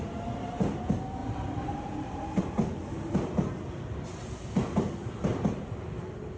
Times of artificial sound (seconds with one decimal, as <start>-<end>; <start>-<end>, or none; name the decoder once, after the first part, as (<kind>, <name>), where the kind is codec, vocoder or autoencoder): 1.2-2.4 (vocoder, BigVGAN v2)